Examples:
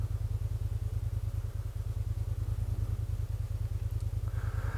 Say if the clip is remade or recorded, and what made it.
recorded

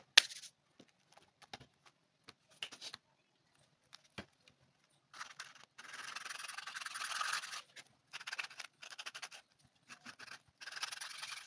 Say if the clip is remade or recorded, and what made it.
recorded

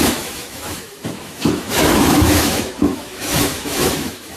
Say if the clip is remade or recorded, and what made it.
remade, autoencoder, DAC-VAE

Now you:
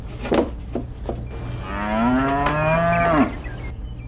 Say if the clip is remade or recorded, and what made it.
recorded